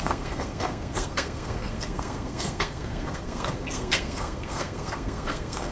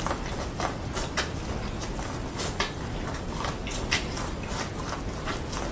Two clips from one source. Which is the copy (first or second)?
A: first